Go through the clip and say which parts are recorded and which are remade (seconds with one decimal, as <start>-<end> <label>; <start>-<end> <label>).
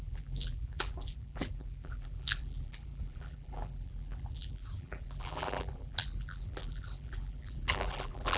0.0-8.4 remade